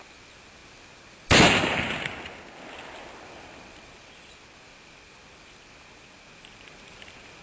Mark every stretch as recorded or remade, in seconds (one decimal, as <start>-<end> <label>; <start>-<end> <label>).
0.0-7.4 recorded